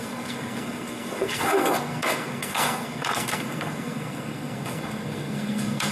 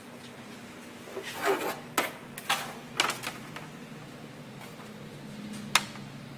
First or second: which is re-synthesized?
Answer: first